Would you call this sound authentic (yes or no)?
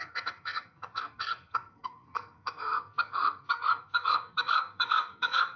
no